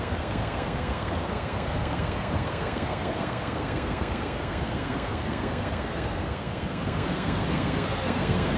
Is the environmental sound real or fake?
fake